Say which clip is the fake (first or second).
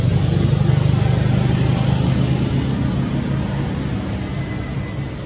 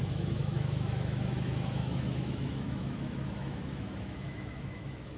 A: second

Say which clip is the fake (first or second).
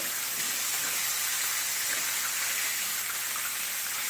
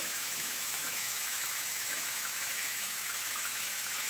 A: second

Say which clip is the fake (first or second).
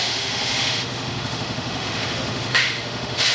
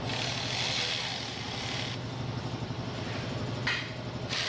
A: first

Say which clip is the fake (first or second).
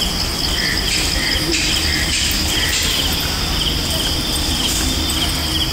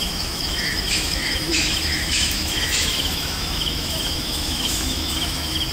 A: second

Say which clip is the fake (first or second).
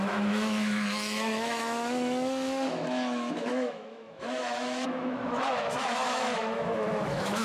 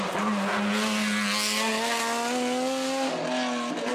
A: first